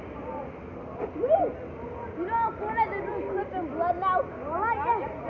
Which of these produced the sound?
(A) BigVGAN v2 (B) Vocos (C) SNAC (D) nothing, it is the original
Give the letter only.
D